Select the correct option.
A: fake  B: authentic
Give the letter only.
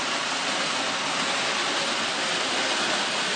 B